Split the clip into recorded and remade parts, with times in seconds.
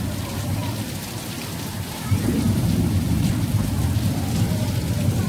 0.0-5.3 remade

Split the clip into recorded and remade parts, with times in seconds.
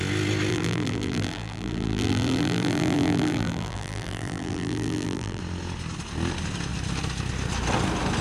0.0-0.5 recorded; 0.5-5.4 remade; 5.4-8.2 recorded